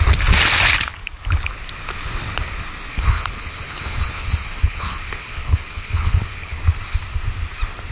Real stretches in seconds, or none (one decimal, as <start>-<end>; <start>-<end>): 0.0-2.9; 6.6-7.9

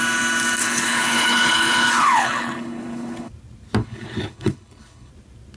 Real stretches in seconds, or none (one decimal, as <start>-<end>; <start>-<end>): 0.0-0.6; 3.3-3.8; 5.1-5.6